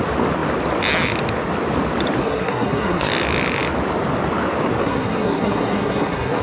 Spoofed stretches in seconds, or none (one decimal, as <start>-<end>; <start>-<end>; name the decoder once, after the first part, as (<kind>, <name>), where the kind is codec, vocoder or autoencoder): 2.2-3.1 (codec, SNAC); 4.8-6.4